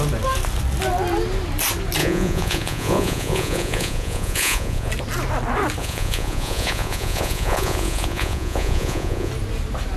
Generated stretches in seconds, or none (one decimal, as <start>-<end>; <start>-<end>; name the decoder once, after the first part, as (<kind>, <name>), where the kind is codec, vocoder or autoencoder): 2.0-4.9 (vocoder, Vocos); 5.8-9.3